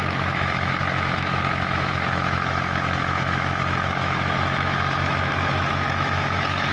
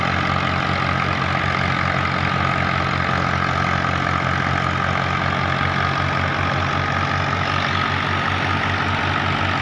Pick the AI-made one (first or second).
first